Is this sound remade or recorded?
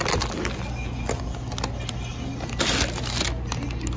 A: recorded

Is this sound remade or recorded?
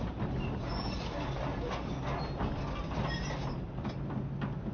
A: recorded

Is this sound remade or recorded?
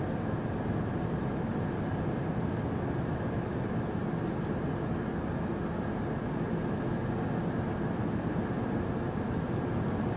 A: recorded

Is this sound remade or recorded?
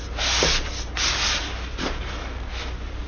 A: recorded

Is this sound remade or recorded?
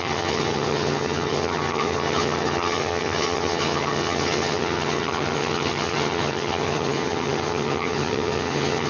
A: remade